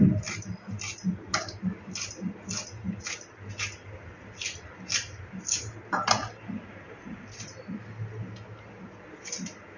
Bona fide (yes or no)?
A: yes